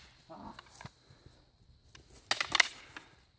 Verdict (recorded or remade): recorded